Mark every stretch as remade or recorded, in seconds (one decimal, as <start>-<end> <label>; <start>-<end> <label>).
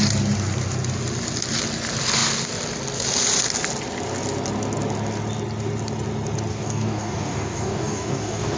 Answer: 0.0-6.5 recorded; 6.5-8.6 remade